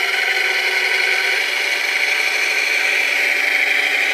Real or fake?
real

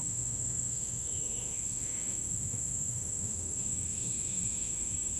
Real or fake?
fake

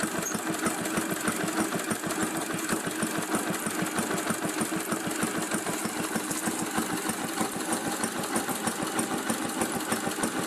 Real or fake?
real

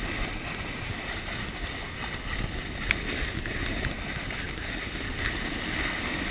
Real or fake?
real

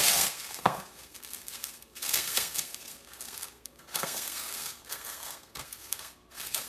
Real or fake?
fake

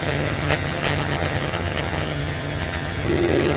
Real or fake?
fake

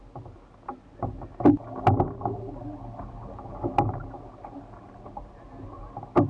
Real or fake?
real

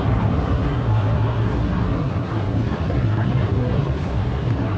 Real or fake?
fake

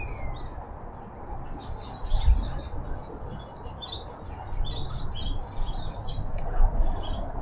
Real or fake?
real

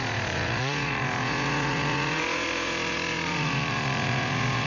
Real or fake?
fake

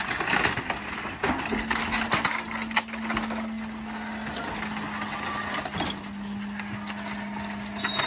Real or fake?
real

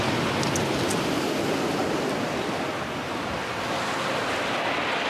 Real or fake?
real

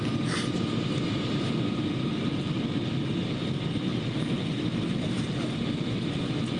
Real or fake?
real